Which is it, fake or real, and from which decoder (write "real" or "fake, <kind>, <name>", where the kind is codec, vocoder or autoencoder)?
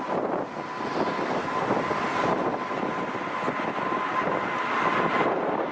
fake, vocoder, BigVGAN v2